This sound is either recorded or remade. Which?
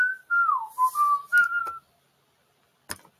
recorded